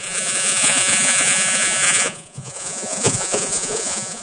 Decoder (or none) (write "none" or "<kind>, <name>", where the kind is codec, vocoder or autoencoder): vocoder, Vocos